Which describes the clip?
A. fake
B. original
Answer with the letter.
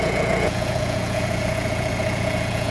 A